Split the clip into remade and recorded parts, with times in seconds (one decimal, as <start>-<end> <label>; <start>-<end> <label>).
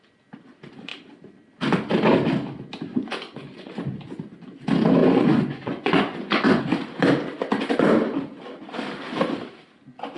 0.0-2.9 recorded; 2.9-3.7 remade; 3.7-5.0 recorded; 5.0-6.6 remade; 6.6-10.2 recorded